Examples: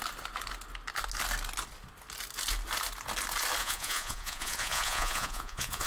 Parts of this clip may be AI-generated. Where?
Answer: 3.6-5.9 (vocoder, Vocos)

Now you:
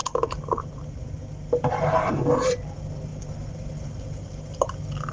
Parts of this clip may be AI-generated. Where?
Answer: none

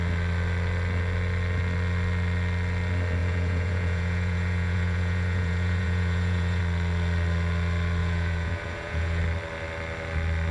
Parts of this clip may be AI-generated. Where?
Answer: 3.2-6.6 (vocoder, Vocos); 8.0-9.2

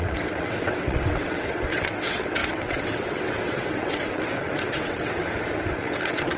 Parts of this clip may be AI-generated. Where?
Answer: 0.0-6.4 (vocoder, WaveNeXt)

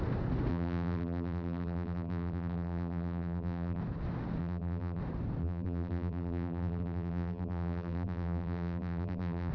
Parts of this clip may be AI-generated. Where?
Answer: 0.5-3.8 (vocoder, BigVGAN v2); 4.4-5.0; 5.4-9.5

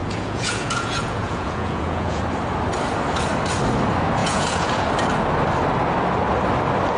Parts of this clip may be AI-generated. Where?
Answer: 0.0-2.2 (vocoder, Vocos); 4.2-4.9

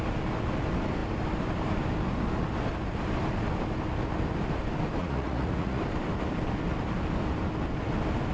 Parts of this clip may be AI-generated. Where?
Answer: 5.0-5.8 (vocoder, Vocos)

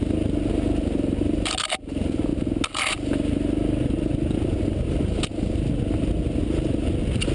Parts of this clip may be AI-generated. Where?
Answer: none